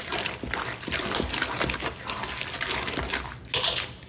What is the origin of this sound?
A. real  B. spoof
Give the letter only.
A